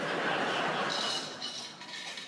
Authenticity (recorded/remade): recorded